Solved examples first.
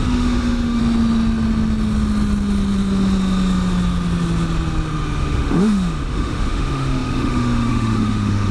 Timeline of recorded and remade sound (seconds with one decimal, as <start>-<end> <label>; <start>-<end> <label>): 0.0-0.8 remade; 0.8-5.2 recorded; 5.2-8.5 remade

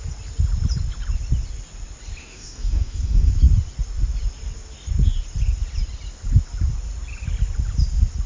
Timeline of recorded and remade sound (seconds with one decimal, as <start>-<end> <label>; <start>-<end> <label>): 0.0-2.2 recorded; 2.2-3.3 remade; 3.3-8.3 recorded

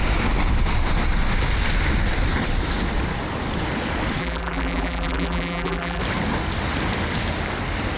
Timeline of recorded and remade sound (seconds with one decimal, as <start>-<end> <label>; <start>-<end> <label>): 0.0-4.2 recorded; 4.2-6.0 remade; 6.0-8.0 recorded